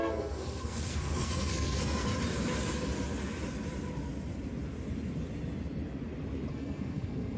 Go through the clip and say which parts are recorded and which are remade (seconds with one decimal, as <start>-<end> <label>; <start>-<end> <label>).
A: 0.0-2.1 remade; 2.1-6.5 recorded; 6.5-7.4 remade